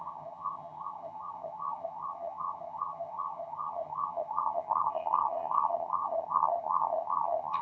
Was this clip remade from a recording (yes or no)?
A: yes